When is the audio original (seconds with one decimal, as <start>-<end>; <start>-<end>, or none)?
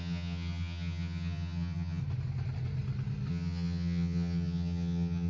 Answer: 2.0-3.3